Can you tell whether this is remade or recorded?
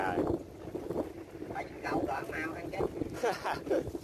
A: recorded